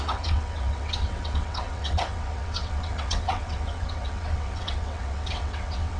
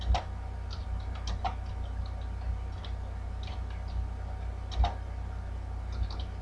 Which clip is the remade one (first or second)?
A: first